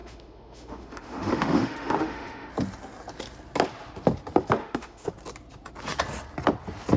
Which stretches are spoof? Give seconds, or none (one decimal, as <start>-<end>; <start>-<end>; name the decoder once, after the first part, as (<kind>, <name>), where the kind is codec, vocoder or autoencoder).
0.0-2.5 (autoencoder, DAC-VAE); 4.6-5.1